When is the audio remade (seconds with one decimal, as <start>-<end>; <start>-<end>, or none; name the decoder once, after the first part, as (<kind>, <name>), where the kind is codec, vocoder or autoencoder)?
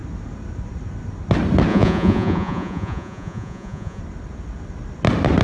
1.7-4.0 (vocoder, Vocos)